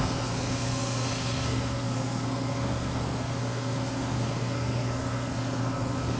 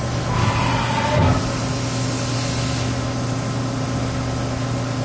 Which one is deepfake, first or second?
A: first